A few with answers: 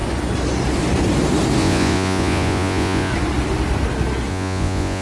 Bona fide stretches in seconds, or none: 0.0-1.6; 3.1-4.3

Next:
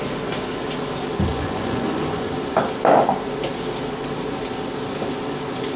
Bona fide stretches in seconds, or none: 0.0-1.3; 2.3-5.8

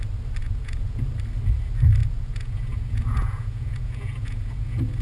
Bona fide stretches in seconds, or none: 0.0-0.4; 1.0-2.0

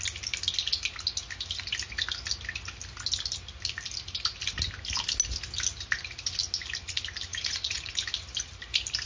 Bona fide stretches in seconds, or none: 0.0-7.3; 7.9-9.1